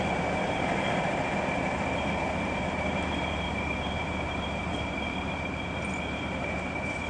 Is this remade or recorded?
remade